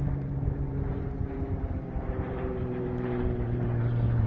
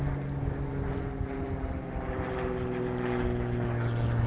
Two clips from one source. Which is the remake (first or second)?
first